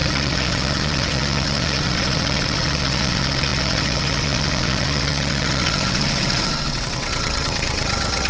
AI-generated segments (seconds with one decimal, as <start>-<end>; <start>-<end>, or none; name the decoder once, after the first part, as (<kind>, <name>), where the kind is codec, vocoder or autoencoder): 0.0-8.3 (vocoder, WaveNeXt)